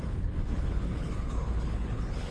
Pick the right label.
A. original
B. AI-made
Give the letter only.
B